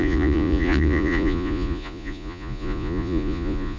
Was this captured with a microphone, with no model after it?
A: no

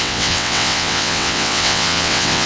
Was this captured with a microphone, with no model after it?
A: no